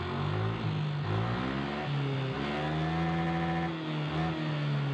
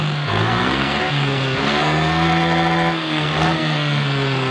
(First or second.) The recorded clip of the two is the first